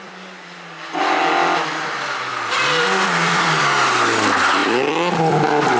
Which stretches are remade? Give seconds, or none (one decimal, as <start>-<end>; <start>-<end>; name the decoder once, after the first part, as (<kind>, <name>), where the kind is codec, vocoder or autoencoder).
2.3-3.6 (vocoder, BigVGAN v2); 4.6-5.3